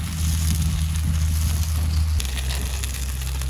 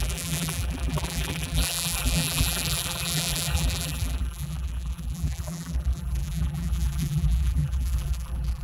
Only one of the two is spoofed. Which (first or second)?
second